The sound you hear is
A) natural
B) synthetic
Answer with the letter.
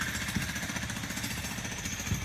A